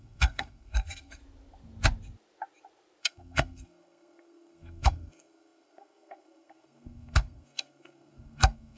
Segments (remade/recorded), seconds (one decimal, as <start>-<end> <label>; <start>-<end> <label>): 0.0-1.2 remade; 1.2-3.0 recorded; 3.0-8.8 remade

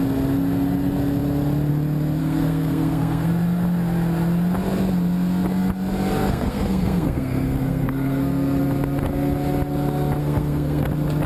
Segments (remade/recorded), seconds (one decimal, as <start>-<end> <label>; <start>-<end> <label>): 0.0-2.2 recorded; 2.2-3.3 remade; 3.3-6.2 recorded; 6.2-8.6 remade; 8.6-10.2 recorded; 10.2-10.9 remade; 10.9-11.3 recorded